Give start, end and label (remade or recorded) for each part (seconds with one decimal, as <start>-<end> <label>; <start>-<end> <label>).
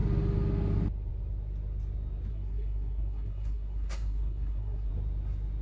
0.0-2.3 recorded; 2.3-4.9 remade; 4.9-5.6 recorded